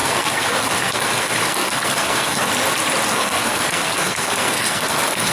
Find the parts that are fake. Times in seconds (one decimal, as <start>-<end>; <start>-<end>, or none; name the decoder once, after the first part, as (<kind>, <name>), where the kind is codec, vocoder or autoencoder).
0.0-2.5 (codec, SNAC); 3.1-5.3